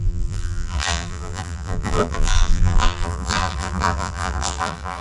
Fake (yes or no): yes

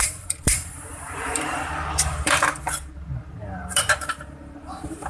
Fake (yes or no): yes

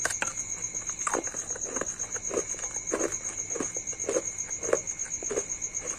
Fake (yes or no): no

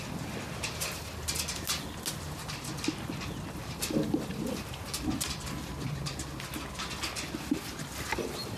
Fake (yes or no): no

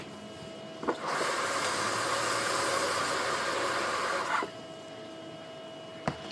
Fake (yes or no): no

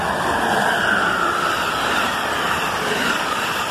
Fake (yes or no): yes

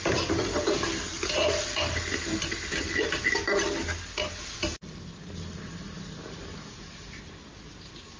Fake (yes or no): no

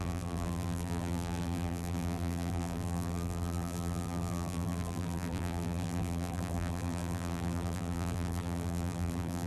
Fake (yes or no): yes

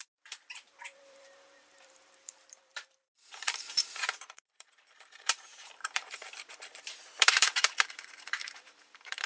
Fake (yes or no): yes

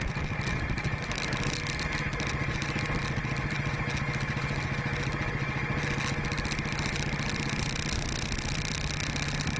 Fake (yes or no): no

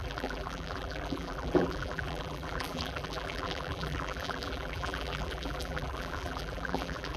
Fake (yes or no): yes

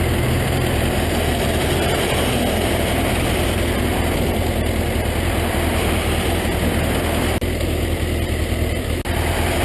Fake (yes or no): no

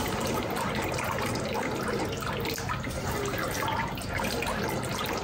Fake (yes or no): no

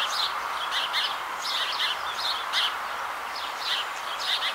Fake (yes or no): no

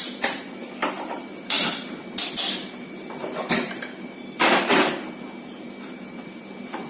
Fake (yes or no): yes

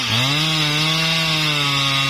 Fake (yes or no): no